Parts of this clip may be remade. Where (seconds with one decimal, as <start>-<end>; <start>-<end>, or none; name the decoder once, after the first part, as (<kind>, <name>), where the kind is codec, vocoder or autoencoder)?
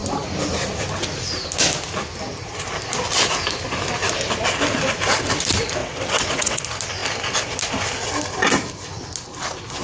5.8-6.6 (vocoder, WaveNeXt)